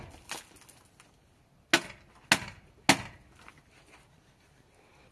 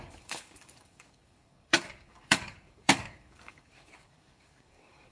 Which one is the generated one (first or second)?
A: second